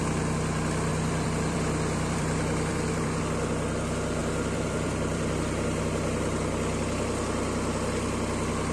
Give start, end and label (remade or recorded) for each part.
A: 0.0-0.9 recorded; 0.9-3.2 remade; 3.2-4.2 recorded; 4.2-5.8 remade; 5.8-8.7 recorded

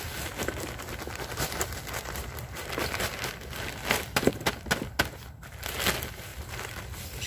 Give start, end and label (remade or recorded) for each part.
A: 0.0-7.3 recorded